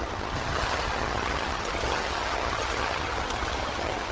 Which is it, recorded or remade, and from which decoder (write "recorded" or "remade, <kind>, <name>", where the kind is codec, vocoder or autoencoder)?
remade, vocoder, HiFi-GAN